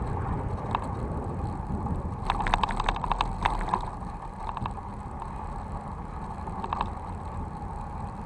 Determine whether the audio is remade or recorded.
recorded